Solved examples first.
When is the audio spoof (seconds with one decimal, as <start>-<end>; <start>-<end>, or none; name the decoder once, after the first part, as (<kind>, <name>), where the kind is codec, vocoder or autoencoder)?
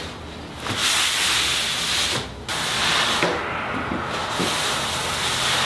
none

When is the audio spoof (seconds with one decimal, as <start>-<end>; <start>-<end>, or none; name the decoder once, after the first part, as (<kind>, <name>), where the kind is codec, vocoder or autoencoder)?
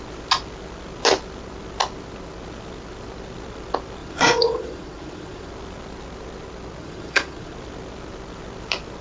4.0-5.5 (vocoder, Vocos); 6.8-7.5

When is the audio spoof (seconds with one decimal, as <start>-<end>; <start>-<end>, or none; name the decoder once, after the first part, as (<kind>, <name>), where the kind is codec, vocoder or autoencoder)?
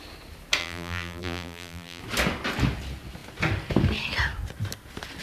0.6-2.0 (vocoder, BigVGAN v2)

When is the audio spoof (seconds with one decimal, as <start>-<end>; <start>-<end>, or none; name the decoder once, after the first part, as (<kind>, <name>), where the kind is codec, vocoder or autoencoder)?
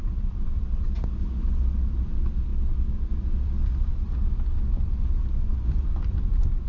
5.5-6.3 (vocoder, BigVGAN v2)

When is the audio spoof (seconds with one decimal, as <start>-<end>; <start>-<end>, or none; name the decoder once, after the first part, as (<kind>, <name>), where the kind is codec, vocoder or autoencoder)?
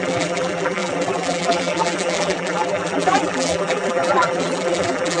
0.0-5.2 (vocoder, BigVGAN v2)